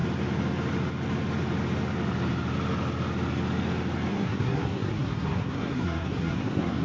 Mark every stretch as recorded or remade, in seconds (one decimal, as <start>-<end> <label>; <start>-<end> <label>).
0.0-4.1 recorded; 4.1-6.8 remade